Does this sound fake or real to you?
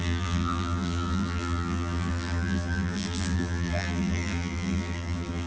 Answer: fake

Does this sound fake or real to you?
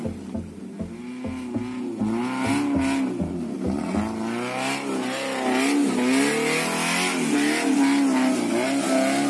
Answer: real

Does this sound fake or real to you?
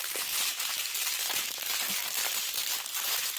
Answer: real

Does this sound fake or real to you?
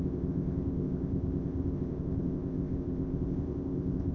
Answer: fake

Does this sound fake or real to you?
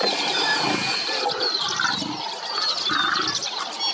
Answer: real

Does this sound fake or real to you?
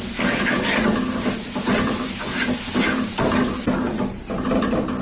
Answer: real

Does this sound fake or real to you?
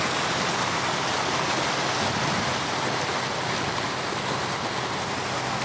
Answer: real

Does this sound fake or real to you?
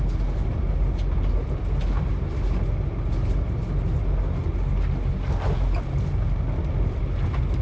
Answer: real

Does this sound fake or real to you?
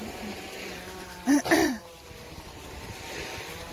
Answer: fake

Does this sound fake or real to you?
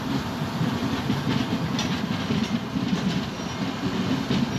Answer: real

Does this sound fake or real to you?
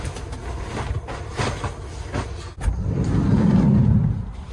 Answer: real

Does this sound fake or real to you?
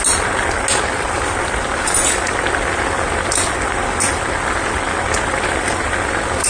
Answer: real